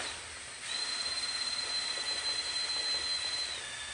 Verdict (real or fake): real